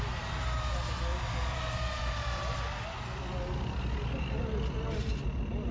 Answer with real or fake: real